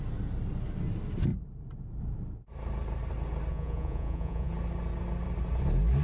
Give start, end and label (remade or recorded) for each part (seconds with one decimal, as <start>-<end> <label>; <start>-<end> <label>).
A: 0.0-3.5 recorded; 3.5-4.5 remade; 4.5-6.0 recorded

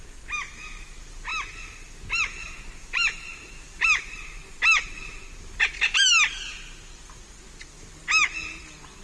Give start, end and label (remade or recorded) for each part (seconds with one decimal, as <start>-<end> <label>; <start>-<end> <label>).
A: 0.0-9.0 recorded

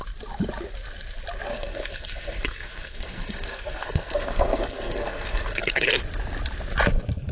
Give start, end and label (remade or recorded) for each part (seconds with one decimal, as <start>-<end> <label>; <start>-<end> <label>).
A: 0.0-1.5 recorded; 1.5-5.9 remade; 5.9-7.3 recorded

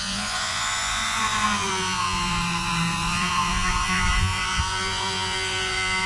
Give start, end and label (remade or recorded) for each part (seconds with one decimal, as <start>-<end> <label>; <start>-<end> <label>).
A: 0.0-6.1 remade

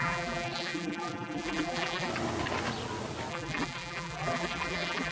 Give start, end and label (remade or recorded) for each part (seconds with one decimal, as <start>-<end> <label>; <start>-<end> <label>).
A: 0.0-2.1 remade; 2.1-3.3 recorded; 3.3-5.1 remade